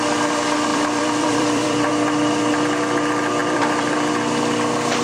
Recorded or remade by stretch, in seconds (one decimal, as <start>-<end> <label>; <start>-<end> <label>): 0.0-0.7 recorded; 0.7-1.9 remade; 1.9-3.4 recorded; 3.4-4.1 remade; 4.1-5.0 recorded